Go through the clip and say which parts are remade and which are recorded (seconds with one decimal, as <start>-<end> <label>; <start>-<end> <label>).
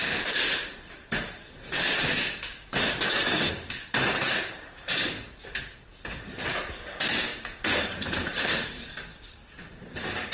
0.0-2.1 recorded; 2.1-3.5 remade; 3.5-10.3 recorded